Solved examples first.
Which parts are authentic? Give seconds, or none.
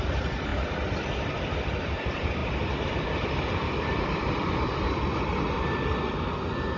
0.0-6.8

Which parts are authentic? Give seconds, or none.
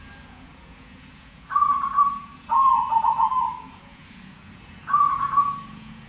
none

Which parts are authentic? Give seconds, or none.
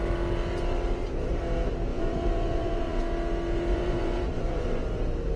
0.0-1.9; 3.0-3.7; 4.8-5.4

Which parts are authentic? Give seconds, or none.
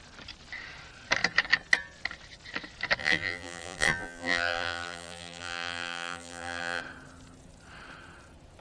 0.0-3.0; 6.8-8.6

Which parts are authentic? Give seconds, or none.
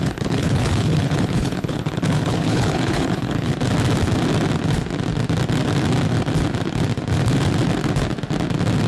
3.5-8.9